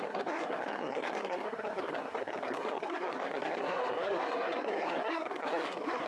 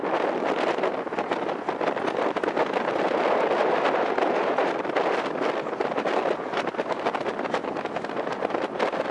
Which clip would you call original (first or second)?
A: second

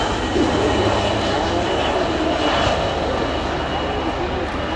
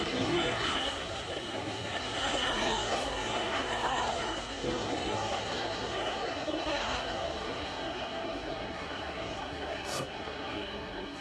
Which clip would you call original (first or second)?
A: first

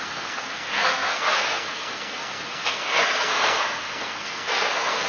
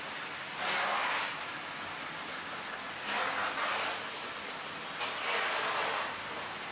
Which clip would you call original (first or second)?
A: second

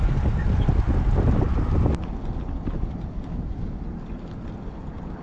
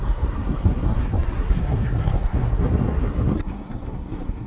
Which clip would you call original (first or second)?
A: first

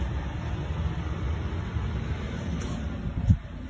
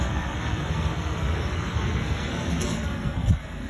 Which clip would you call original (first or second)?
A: first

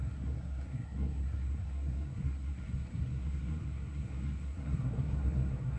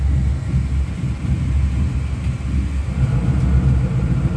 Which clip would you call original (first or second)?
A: second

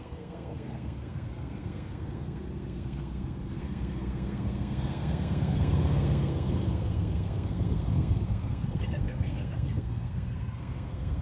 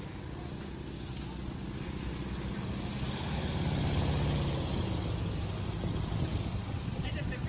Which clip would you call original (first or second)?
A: second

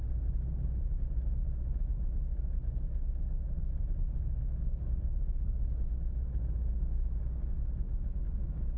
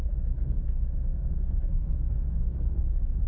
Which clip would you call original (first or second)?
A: first